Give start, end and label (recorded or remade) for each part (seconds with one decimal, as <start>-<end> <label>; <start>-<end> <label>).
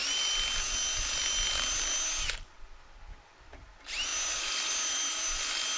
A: 0.0-5.8 recorded